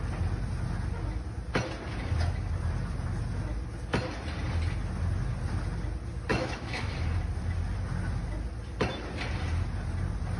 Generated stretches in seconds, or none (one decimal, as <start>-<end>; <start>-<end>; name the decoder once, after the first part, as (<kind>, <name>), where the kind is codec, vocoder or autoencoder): 6.3-6.9 (autoencoder, DAC-VAE)